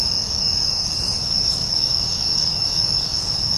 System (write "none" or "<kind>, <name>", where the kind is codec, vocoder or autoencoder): codec, DAC